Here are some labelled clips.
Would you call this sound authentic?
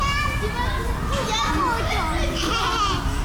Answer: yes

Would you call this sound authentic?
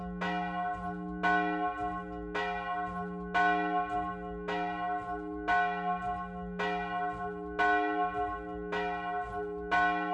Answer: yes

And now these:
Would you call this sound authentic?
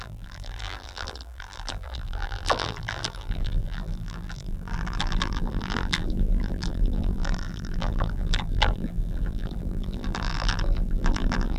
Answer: no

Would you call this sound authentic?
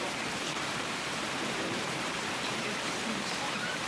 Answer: no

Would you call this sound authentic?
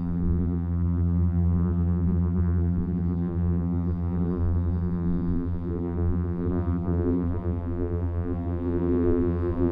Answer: no